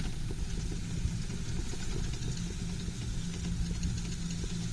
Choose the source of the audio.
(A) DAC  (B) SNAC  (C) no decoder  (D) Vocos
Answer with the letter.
C